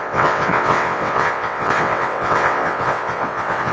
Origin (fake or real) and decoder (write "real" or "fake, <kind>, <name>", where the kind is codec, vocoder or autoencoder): fake, vocoder, WaveNeXt